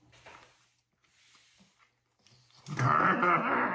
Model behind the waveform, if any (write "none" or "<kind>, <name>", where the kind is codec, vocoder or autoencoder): none